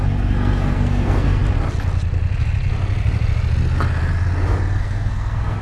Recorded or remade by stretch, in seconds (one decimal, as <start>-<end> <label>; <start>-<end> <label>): 0.0-1.4 remade; 1.4-4.8 recorded; 4.8-5.6 remade